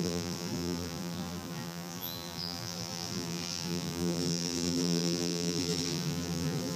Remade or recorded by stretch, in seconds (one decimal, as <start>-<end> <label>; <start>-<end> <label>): 0.0-6.8 remade